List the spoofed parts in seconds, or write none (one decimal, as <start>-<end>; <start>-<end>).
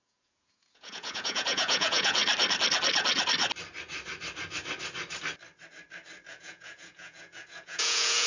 0.0-2.2; 6.3-8.3